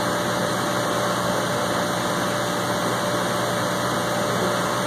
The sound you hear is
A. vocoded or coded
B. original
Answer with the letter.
B